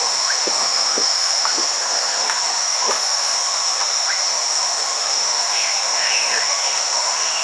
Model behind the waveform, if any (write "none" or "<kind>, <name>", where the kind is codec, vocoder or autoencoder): autoencoder, DAC-VAE